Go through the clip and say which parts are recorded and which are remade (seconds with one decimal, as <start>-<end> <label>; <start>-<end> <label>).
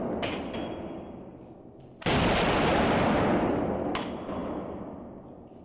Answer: 0.0-5.6 recorded